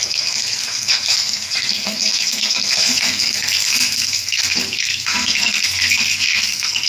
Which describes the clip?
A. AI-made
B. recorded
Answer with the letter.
A